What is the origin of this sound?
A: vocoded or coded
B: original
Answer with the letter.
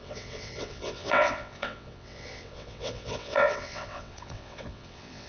A